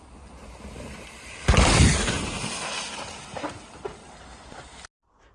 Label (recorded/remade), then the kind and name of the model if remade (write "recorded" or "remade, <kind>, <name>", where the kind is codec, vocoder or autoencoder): recorded